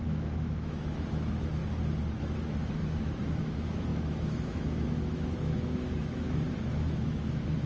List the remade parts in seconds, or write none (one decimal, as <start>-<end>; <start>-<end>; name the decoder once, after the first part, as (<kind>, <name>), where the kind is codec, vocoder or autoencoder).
0.0-1.6 (autoencoder, DAC-VAE); 2.2-7.7